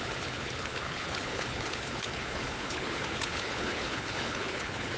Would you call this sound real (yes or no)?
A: no